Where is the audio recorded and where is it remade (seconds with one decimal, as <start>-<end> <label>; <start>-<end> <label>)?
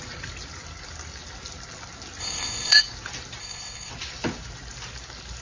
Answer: 0.0-2.2 recorded; 2.2-2.8 remade; 2.8-3.4 recorded; 3.4-3.9 remade; 3.9-5.4 recorded